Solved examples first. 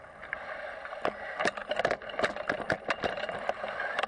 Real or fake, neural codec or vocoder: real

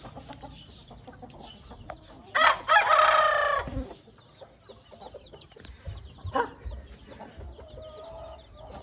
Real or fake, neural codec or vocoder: real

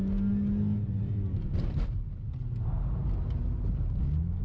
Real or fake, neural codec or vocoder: real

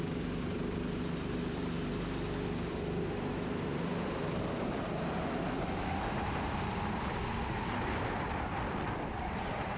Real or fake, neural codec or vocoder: real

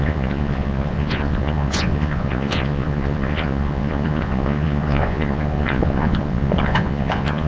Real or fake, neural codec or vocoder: fake, vocoder, Vocos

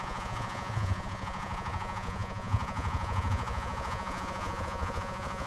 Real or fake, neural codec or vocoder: fake, vocoder, Vocos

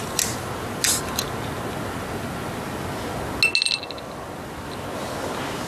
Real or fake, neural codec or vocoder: real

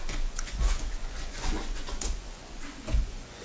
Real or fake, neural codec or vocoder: fake, vocoder, Vocos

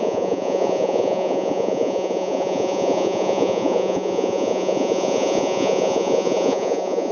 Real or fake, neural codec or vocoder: fake, vocoder, Vocos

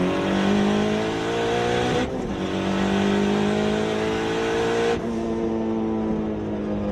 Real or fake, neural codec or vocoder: real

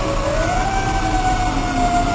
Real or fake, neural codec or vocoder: real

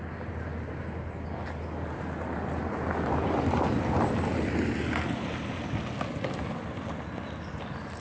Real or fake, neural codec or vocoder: real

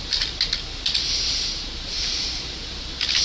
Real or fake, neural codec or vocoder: real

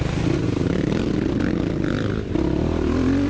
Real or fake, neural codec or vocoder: real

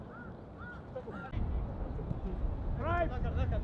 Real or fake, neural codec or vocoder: real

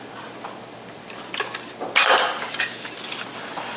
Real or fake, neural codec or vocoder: real